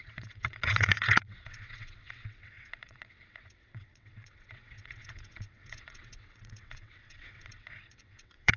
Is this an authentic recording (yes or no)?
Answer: no